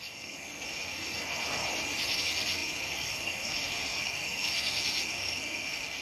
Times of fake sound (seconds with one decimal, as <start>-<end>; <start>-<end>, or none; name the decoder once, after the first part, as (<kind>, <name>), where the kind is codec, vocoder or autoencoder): 0.0-1.6 (codec, SNAC); 2.2-6.0